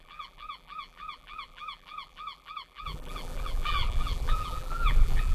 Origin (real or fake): fake